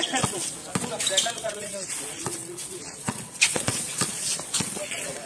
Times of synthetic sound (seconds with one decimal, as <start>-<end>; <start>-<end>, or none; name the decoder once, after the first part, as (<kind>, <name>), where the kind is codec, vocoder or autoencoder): 0.0-0.6 (vocoder, Vocos); 1.3-5.3